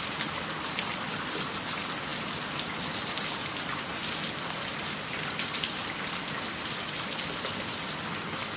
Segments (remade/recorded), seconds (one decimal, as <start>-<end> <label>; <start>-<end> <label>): 0.0-8.6 recorded